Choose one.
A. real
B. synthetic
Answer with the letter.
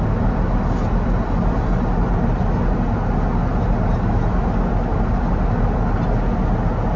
A